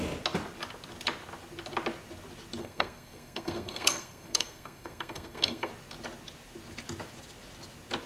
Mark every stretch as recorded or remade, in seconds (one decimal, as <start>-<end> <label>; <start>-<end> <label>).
0.0-2.6 recorded; 2.6-5.7 remade; 5.7-8.1 recorded